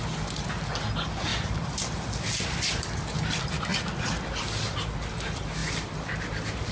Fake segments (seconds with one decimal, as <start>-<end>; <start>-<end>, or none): 1.3-2.9; 5.6-6.7